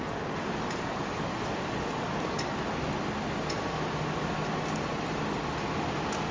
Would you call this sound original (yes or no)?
yes